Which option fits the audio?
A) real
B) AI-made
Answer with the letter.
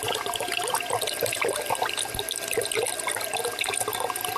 A